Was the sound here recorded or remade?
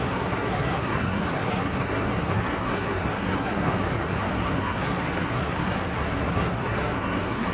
remade